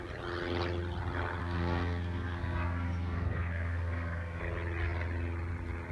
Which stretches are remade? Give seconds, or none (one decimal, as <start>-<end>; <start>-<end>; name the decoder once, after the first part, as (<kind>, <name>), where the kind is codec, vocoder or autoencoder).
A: 1.4-4.4 (codec, SNAC)